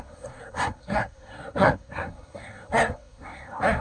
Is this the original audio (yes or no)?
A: no